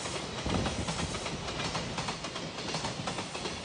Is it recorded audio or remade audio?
recorded